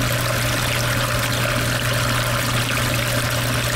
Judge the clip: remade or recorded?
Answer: recorded